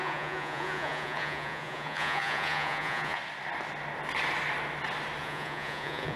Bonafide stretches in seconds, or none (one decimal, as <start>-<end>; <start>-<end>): 3.2-5.2

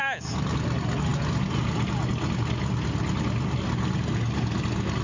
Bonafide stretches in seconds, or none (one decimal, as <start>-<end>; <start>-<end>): 0.0-5.0

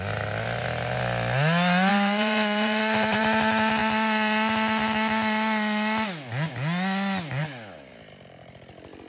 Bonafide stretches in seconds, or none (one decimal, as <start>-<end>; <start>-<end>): 0.0-1.9; 3.2-9.1

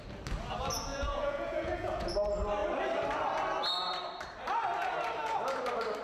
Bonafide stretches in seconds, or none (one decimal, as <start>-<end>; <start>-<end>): 0.0-0.9; 2.1-6.0

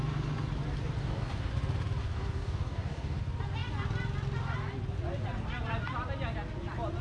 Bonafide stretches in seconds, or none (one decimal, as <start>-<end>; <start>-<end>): 0.0-1.0; 1.5-2.0; 3.2-7.0

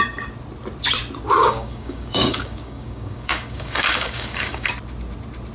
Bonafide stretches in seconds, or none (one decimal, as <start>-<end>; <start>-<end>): 0.0-1.4; 4.7-5.5

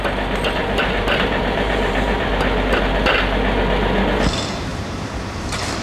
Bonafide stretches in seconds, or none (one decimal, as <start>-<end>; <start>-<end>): 0.0-0.6; 2.3-4.7; 5.3-5.8